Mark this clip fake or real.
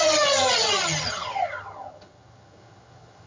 fake